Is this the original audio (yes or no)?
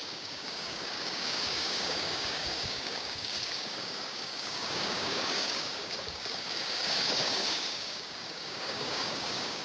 no